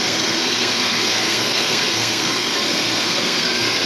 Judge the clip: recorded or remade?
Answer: remade